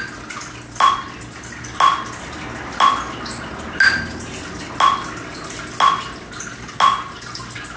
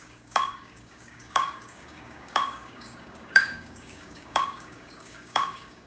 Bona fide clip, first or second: first